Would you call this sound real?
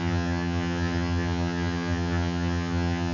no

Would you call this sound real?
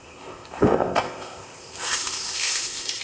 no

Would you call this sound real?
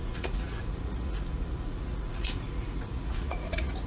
no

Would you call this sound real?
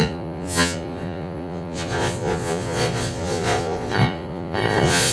no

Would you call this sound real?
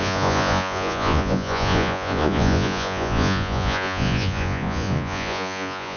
no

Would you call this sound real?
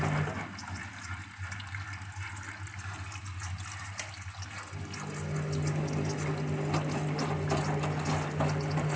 yes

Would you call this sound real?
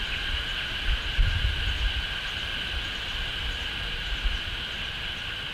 yes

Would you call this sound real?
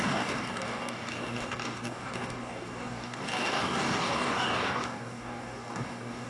no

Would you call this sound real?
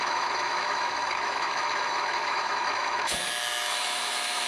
no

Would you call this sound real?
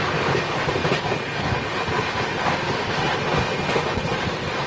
yes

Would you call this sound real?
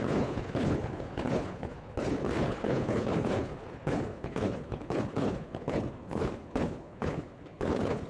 no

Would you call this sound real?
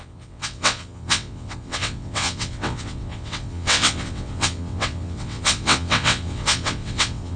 no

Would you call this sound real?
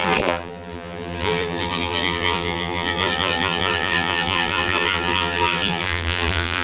no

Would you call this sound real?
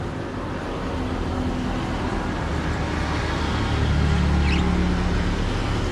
yes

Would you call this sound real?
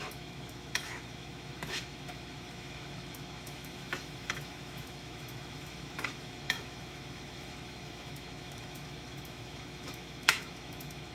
no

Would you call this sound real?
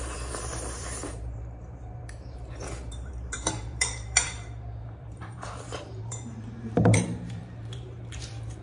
no